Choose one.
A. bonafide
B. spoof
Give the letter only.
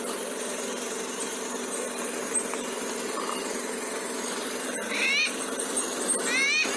A